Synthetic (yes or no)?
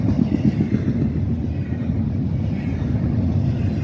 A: no